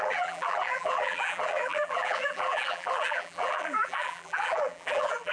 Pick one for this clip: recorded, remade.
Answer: remade